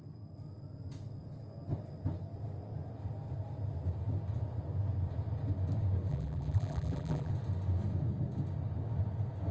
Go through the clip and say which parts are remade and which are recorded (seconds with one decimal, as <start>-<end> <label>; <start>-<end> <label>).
0.0-6.1 recorded; 6.1-7.3 remade; 7.3-9.5 recorded